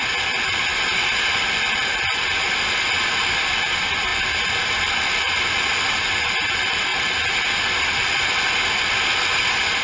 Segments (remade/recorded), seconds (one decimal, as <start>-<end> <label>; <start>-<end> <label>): 0.0-9.8 recorded